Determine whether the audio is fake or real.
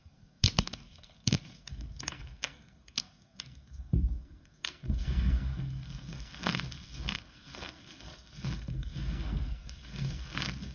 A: fake